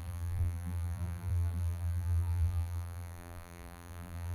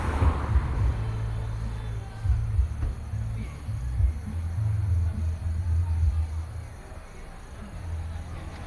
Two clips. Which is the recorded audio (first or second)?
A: second